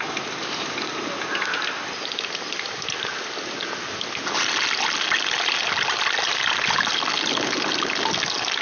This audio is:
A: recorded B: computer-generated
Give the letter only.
A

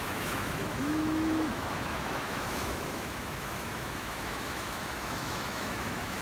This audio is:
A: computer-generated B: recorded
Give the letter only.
A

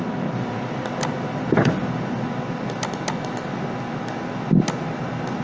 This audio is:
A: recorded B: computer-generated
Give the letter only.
A